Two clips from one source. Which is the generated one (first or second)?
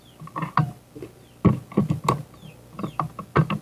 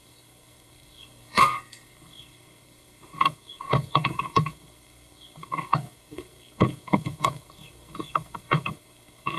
second